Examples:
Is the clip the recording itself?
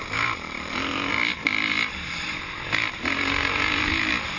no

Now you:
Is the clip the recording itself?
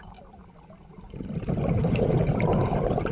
no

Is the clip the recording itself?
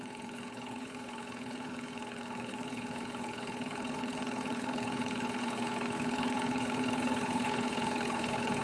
no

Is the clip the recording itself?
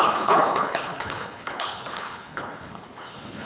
no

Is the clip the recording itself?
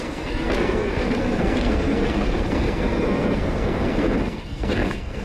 no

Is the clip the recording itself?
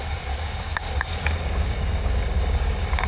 no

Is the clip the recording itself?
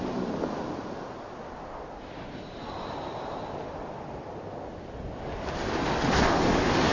yes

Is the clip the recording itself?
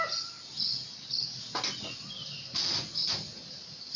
yes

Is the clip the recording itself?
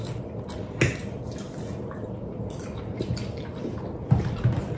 yes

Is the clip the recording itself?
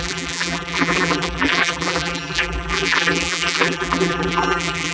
no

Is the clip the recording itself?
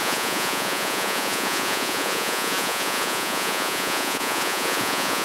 no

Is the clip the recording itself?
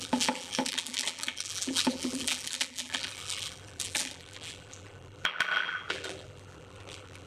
no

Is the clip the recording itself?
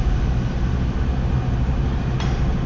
yes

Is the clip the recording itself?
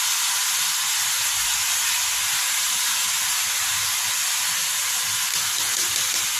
yes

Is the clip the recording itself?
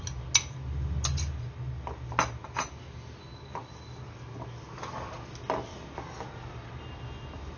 yes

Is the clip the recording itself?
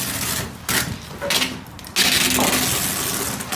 yes